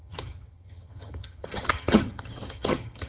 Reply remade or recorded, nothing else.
remade